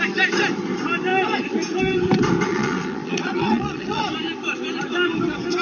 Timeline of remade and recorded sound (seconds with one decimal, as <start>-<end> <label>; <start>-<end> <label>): 0.0-2.5 recorded; 2.5-4.0 remade; 4.0-5.6 recorded

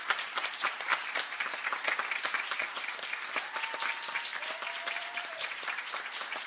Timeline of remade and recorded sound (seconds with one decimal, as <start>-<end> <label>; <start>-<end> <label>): 0.0-0.9 remade; 0.9-4.8 recorded; 4.8-6.5 remade

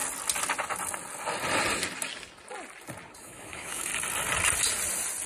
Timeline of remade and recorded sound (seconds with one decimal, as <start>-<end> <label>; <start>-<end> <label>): 0.0-3.2 recorded; 3.2-3.9 remade; 3.9-5.3 recorded

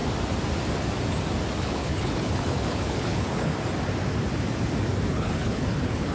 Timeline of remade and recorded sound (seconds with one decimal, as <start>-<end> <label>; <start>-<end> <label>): 0.0-1.6 recorded; 1.6-3.5 remade; 3.5-5.1 recorded; 5.1-6.1 remade

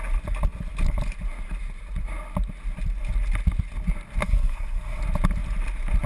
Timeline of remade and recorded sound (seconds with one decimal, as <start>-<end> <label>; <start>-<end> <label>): 0.0-4.2 recorded; 4.2-5.0 remade; 5.0-6.1 recorded

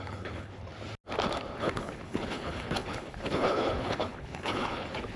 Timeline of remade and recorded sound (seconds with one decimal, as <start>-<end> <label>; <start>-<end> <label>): 0.0-0.7 remade; 0.7-1.6 recorded; 1.6-5.2 remade